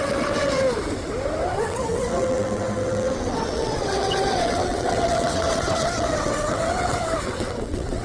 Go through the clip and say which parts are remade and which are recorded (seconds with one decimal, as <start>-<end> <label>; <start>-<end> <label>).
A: 0.0-0.6 remade; 0.6-1.5 recorded; 1.5-8.0 remade